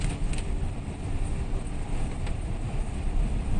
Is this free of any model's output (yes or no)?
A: yes